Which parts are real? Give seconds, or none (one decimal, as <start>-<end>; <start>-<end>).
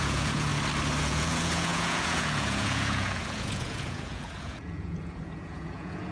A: 0.5-1.0